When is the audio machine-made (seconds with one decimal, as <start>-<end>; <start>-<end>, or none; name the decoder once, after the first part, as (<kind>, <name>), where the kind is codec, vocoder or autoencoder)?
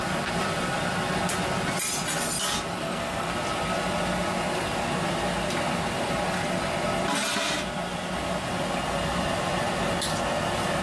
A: 2.8-3.3 (codec, SNAC)